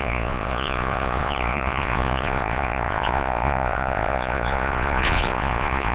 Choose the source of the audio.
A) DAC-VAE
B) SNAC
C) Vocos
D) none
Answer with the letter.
C